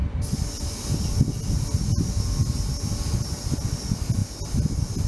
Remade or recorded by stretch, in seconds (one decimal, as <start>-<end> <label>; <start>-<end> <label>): 0.0-5.1 recorded